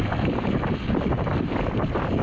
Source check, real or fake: real